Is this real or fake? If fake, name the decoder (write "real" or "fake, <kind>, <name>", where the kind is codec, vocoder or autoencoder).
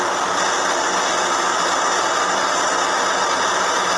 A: real